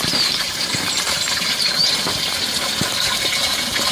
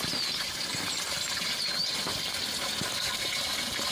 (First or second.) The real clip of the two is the second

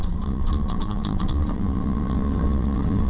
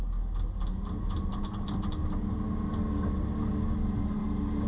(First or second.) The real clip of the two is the second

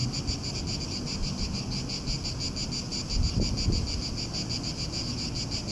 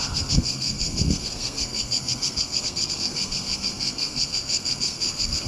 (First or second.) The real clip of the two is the first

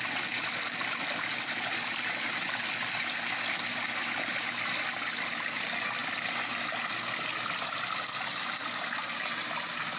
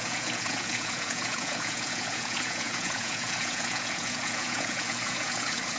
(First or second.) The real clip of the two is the first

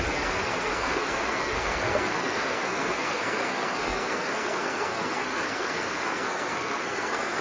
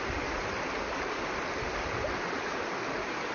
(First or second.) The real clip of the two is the second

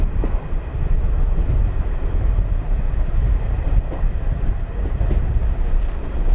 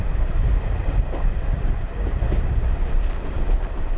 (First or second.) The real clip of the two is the first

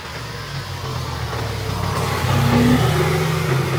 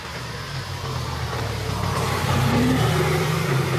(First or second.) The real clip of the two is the first